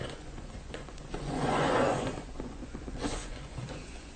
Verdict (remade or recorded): remade